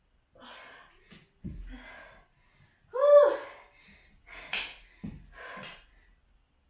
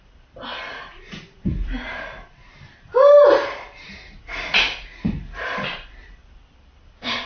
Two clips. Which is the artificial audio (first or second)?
second